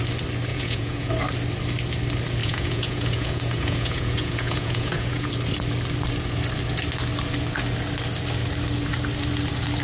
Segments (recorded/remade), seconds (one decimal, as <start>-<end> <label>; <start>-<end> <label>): 0.0-0.5 recorded; 0.5-1.1 remade; 1.1-2.4 recorded; 2.4-5.3 remade; 5.3-9.8 recorded